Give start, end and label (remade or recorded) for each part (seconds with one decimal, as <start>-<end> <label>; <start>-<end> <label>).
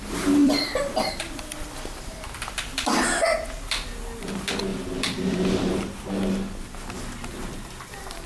0.0-0.4 recorded; 0.4-3.0 remade; 3.0-4.7 recorded; 4.7-5.5 remade; 5.5-8.3 recorded